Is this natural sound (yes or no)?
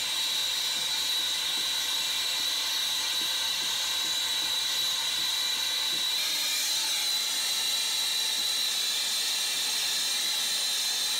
yes